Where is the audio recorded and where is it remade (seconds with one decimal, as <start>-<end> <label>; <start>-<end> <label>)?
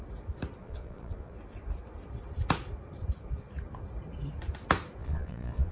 0.0-0.6 recorded; 0.6-1.3 remade; 1.3-5.0 recorded; 5.0-5.7 remade